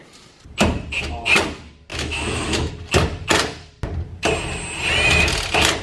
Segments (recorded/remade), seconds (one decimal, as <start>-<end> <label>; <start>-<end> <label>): 0.0-1.9 recorded; 1.9-2.7 remade; 2.7-5.8 recorded

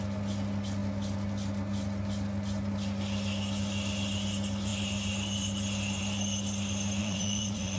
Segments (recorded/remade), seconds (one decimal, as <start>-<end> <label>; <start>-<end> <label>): 0.0-7.0 recorded; 7.0-7.8 remade

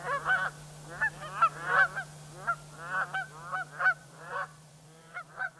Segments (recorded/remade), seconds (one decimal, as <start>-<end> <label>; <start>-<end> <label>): 0.0-4.0 recorded; 4.0-5.6 remade

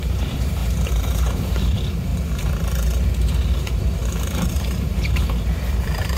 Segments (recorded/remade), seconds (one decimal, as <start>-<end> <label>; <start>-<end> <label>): 0.0-2.1 remade; 2.1-3.6 recorded; 3.6-4.0 remade; 4.0-4.5 recorded; 4.5-6.2 remade